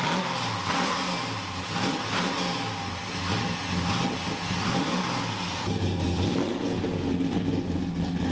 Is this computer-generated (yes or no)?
no